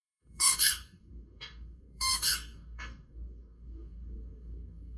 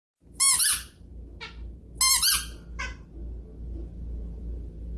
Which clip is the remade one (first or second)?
first